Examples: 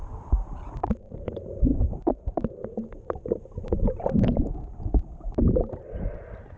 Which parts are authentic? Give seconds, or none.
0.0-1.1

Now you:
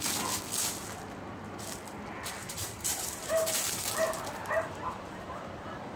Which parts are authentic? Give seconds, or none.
0.0-2.4; 4.8-6.0

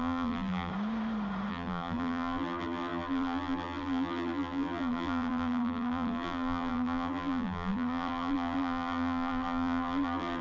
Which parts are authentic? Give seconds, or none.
0.7-1.5

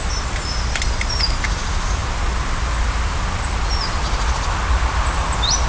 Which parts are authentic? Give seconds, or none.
0.0-5.7

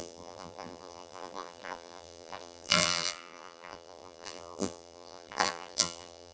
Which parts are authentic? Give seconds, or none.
none

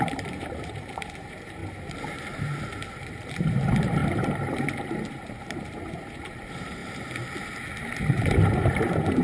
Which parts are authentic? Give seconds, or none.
6.8-8.0

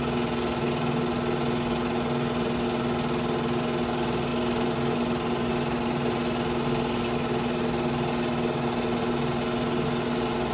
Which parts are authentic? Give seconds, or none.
0.0-10.5

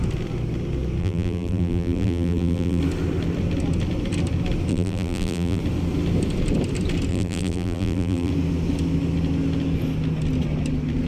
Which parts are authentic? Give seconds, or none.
0.0-1.0; 2.8-4.7; 5.6-7.1; 8.3-11.1